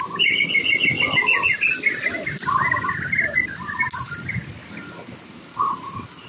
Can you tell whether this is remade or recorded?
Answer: recorded